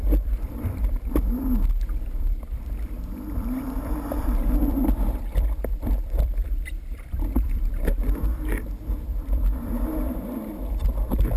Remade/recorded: remade